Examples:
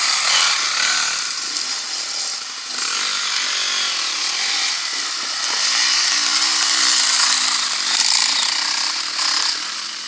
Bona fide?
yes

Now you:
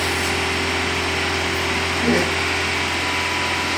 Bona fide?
yes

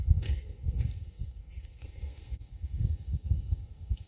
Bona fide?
no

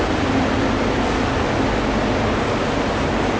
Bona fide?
yes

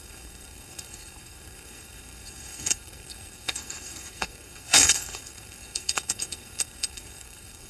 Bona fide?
no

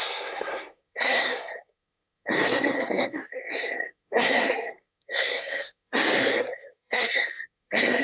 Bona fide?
no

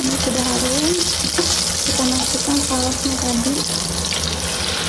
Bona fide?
yes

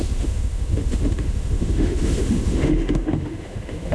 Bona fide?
no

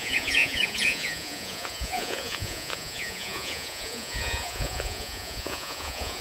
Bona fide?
no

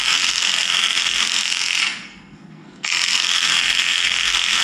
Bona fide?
no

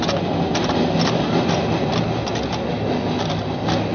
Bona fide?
yes